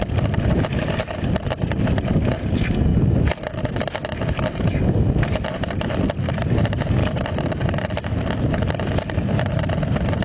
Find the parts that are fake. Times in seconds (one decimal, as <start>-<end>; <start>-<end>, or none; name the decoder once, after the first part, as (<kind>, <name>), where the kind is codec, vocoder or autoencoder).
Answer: 7.0-8.2 (vocoder, BigVGAN v2)